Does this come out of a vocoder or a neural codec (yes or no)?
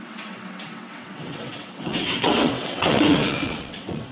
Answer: yes